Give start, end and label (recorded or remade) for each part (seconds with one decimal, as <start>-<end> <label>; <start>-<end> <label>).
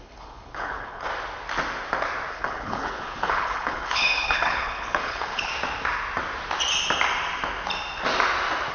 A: 0.0-1.1 remade; 1.1-2.3 recorded; 2.3-5.5 remade; 5.5-8.7 recorded